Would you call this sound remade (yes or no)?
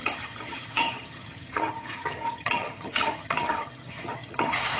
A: yes